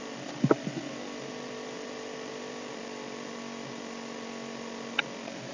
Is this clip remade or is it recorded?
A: recorded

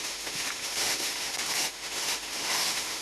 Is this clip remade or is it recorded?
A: remade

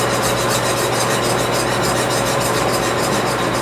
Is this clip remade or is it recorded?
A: recorded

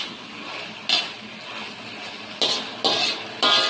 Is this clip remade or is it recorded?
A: recorded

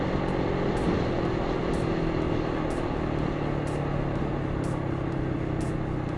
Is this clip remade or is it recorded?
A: recorded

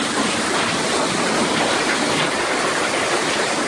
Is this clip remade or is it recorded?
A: recorded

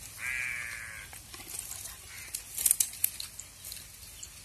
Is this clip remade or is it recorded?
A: recorded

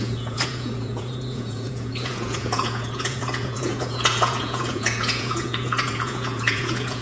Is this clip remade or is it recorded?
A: remade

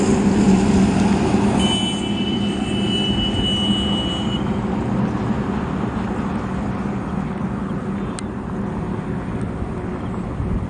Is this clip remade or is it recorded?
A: recorded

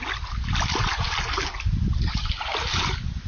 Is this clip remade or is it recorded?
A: recorded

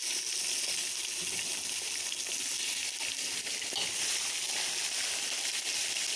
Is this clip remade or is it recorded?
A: recorded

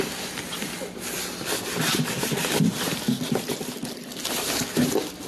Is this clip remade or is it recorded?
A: recorded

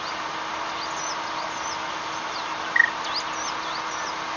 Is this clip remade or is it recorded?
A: recorded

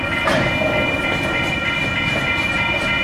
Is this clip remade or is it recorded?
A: recorded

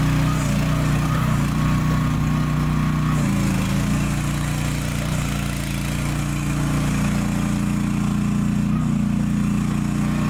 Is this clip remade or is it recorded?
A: recorded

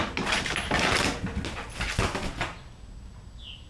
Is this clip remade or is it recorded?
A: recorded